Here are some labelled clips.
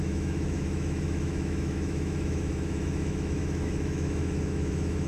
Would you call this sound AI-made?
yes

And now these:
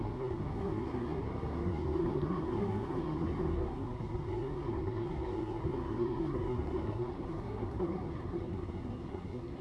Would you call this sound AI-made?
yes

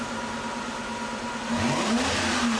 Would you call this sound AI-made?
yes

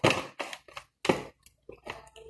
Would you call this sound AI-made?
no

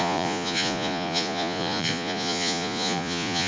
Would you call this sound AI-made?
yes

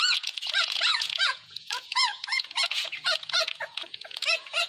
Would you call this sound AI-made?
yes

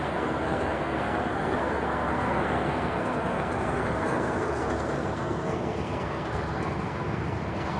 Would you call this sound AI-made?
yes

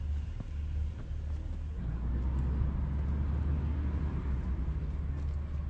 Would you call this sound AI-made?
no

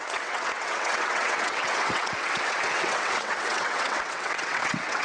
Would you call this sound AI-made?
yes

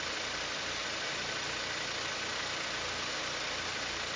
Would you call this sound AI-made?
no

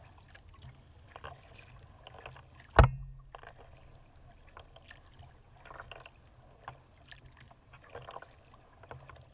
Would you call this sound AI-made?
no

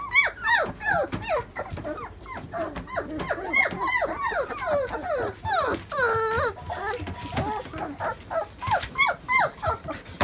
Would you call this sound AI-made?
no